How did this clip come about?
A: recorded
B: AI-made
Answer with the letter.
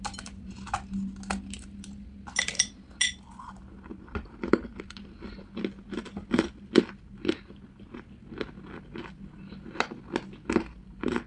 A